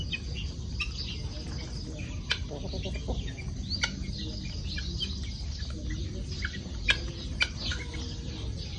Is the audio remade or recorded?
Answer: recorded